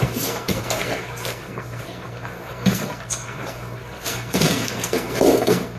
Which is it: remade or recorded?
remade